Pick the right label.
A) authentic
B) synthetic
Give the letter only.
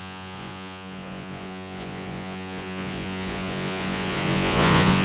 B